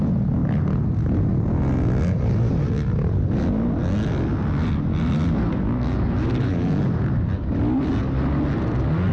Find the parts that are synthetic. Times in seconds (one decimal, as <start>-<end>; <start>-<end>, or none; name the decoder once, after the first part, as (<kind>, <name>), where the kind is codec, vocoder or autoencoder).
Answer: none